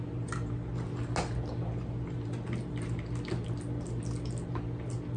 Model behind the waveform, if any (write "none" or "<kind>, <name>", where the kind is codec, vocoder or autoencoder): none